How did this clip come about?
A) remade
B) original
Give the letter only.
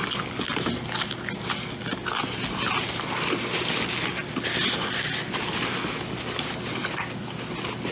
B